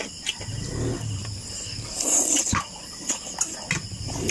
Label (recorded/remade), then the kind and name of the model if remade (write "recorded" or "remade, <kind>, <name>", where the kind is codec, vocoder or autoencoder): recorded